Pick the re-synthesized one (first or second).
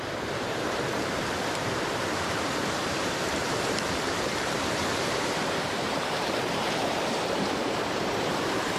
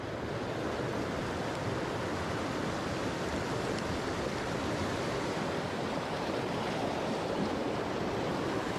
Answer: first